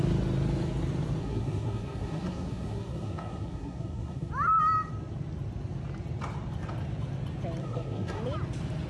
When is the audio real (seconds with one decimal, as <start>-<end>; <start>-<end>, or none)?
0.0-1.2; 4.3-7.6; 8.2-8.9